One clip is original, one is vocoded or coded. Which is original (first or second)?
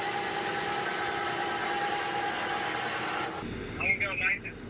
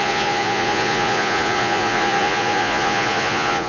first